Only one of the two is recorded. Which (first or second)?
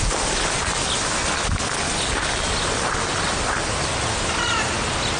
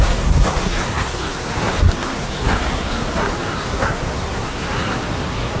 first